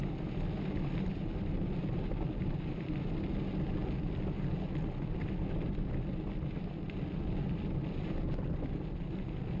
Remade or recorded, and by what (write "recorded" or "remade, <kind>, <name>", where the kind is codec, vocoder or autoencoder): recorded